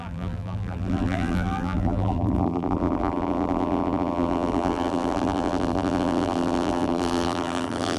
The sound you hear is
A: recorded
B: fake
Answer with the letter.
B